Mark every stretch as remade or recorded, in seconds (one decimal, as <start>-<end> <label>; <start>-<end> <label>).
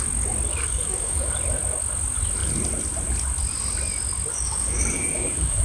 0.0-0.5 recorded; 0.5-1.3 remade; 1.3-4.3 recorded; 4.3-5.6 remade